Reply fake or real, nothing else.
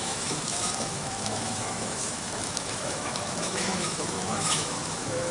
fake